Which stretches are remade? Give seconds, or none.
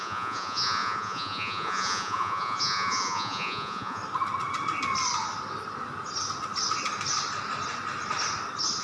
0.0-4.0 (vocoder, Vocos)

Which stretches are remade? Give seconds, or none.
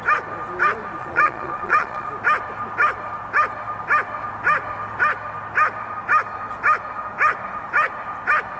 1.0-2.1 (vocoder, Vocos)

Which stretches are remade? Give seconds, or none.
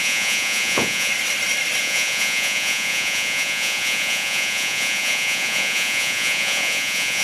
0.0-1.1 (vocoder, Vocos); 1.8-7.2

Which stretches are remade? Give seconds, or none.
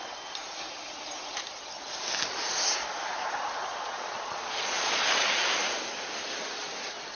3.7-5.0 (vocoder, Vocos)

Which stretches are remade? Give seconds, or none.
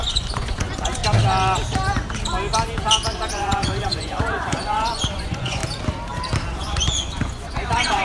0.0-1.0 (vocoder, Vocos); 3.3-5.6; 6.6-8.0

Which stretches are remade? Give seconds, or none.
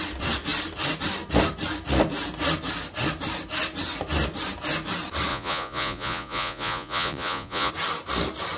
5.3-7.7 (vocoder, Vocos)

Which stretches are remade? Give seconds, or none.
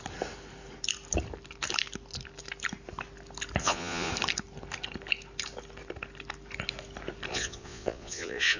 3.6-4.1 (vocoder, Vocos); 7.3-8.6